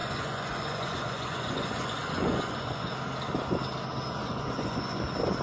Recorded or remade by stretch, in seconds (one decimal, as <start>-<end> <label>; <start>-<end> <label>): 0.0-2.9 remade; 2.9-4.2 recorded; 4.2-5.0 remade; 5.0-5.4 recorded